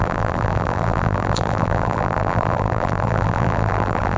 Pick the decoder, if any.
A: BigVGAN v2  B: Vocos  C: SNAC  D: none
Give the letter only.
A